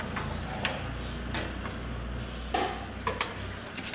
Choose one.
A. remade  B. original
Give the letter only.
B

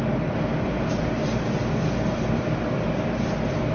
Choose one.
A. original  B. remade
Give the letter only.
A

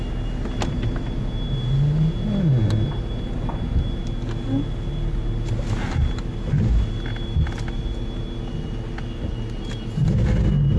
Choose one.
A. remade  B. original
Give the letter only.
B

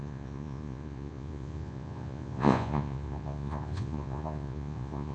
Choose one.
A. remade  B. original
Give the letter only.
A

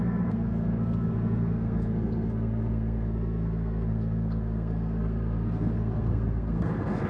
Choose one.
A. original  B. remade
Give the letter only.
B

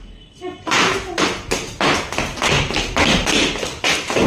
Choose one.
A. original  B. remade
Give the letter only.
A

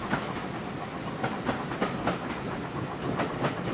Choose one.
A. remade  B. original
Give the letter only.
B